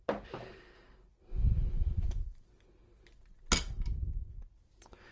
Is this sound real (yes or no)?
yes